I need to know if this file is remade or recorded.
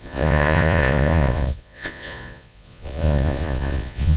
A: remade